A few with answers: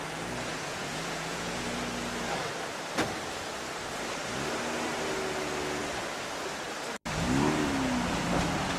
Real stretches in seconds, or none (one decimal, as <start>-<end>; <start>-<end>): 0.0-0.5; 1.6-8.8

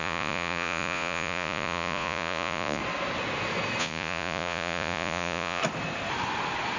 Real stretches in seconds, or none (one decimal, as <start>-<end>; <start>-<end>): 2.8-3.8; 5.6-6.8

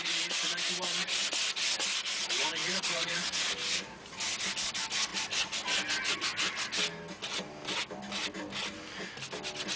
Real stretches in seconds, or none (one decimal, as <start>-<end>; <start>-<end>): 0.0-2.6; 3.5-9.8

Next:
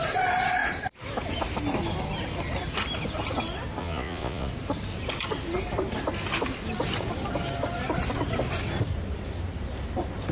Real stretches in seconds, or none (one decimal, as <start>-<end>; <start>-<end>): 0.0-3.8; 4.5-10.3

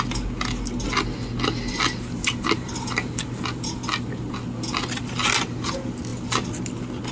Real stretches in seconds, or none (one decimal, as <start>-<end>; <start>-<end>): 0.0-7.1